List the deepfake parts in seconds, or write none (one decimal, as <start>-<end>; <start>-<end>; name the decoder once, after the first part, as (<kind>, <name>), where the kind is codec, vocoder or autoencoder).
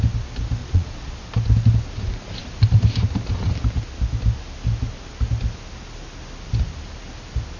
0.6-1.1 (vocoder, Vocos)